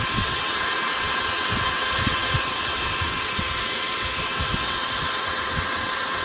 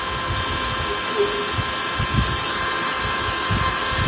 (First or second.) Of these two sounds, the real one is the second